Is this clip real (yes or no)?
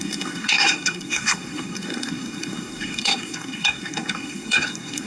no